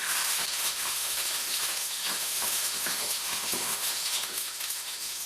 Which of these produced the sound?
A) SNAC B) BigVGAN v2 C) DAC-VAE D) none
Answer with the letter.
C